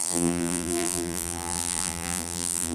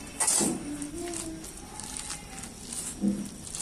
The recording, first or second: second